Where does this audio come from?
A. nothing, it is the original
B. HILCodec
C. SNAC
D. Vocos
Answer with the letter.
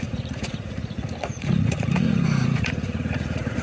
D